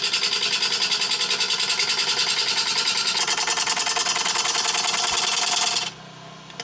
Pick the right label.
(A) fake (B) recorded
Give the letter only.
B